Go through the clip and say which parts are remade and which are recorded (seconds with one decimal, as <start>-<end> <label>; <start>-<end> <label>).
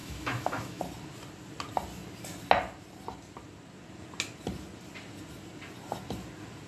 0.0-0.8 remade; 0.8-6.7 recorded